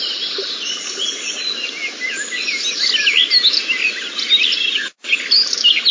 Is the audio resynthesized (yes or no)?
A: no